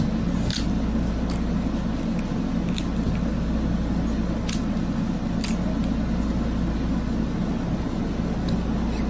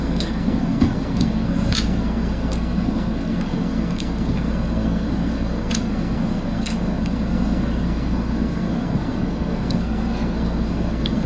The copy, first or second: second